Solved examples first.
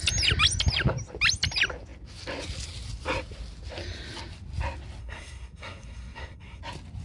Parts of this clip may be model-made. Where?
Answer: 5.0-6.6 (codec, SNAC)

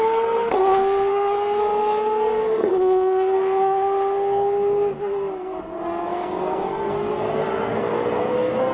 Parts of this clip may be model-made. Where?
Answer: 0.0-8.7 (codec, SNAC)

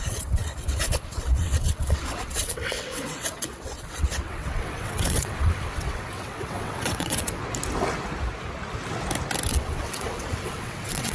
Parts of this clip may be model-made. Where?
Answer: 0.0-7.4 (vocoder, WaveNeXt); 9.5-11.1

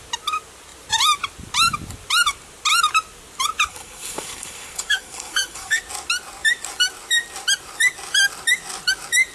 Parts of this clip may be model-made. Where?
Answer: 3.7-5.8 (codec, SNAC)